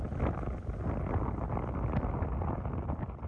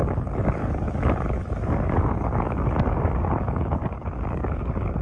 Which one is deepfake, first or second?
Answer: second